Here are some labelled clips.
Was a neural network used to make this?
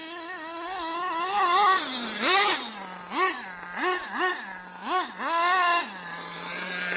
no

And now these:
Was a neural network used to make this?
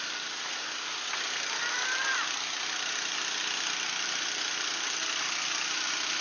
no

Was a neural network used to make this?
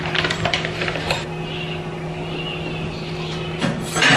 yes